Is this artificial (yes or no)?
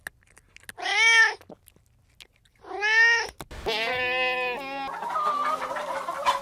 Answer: no